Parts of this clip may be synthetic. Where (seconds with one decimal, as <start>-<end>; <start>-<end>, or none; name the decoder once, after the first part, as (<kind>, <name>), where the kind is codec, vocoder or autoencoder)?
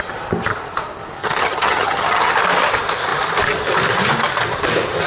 1.2-2.3 (vocoder, HiFi-GAN)